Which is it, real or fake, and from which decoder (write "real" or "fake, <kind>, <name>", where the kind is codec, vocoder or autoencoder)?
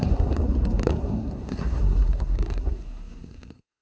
fake, codec, SNAC